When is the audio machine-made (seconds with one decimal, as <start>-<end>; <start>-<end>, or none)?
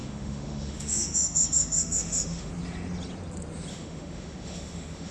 0.0-2.5; 3.7-5.1